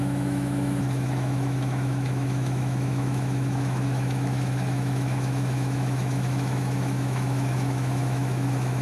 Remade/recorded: remade